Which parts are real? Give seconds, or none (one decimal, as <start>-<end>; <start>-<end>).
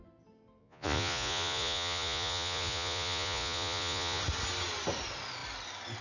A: 0.0-0.6; 4.2-6.0